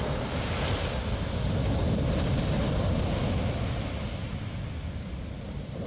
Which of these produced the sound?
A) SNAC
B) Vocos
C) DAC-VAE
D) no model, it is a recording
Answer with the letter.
D